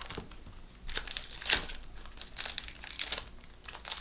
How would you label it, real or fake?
real